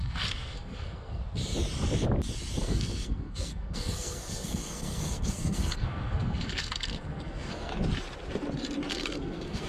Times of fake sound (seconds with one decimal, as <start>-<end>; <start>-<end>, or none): 0.0-1.2; 2.6-7.7; 8.9-9.7